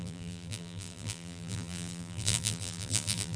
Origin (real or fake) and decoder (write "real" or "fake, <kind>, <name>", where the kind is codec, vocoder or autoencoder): fake, vocoder, BigVGAN v2